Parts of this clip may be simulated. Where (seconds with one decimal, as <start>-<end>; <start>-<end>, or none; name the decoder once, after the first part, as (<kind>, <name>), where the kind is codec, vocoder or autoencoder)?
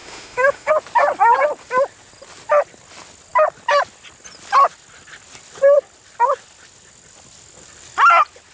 0.0-0.7 (autoencoder, DAC-VAE)